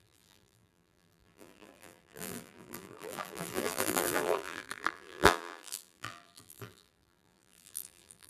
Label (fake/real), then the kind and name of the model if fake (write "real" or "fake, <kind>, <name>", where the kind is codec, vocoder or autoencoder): fake, vocoder, BigVGAN v2